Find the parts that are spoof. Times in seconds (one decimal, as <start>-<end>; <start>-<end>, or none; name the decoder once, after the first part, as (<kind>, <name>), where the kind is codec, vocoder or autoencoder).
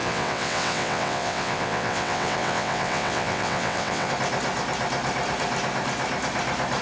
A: 0.0-4.1 (vocoder, WaveNeXt)